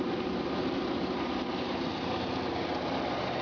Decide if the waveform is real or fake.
real